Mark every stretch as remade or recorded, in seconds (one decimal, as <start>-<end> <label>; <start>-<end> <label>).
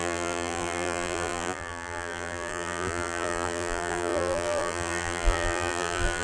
0.0-6.2 remade